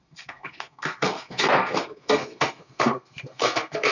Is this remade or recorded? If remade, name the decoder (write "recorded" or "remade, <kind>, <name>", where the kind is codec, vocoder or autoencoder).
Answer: remade, codec, SNAC